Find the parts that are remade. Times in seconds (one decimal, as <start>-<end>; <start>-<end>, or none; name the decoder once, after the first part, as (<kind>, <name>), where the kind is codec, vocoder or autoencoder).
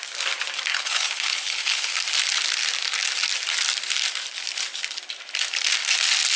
0.7-1.9 (codec, HILCodec)